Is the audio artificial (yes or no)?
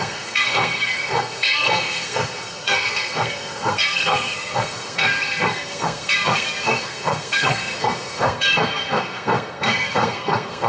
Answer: yes